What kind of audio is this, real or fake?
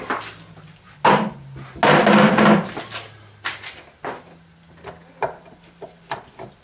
real